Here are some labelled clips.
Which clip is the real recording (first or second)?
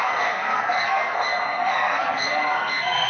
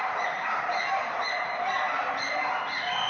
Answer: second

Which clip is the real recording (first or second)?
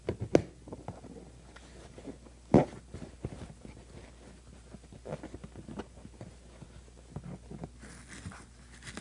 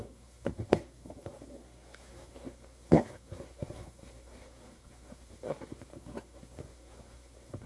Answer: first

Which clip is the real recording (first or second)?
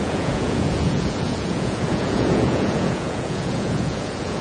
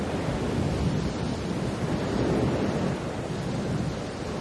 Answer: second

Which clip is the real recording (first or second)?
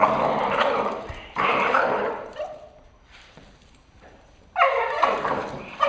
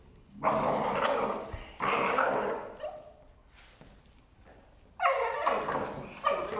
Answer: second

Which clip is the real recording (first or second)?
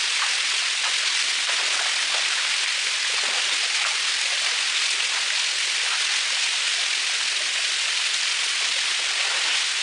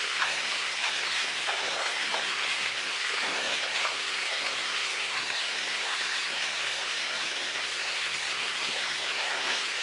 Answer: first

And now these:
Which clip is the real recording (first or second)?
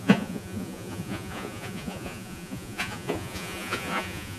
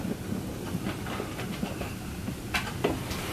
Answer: second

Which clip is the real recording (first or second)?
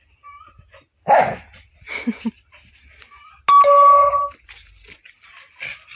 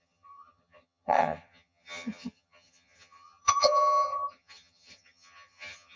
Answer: first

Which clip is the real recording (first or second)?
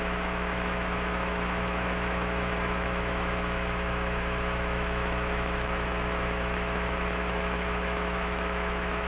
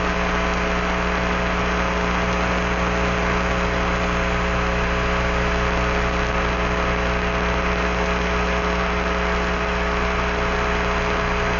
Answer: second